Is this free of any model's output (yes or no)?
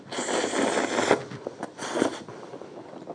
yes